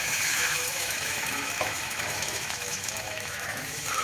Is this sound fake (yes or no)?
yes